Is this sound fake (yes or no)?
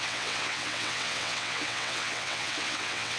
yes